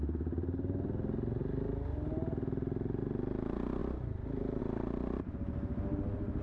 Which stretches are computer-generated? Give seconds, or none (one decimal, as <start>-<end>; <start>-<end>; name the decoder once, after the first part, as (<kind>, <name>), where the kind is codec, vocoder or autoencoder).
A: 3.8-4.6 (vocoder, BigVGAN v2)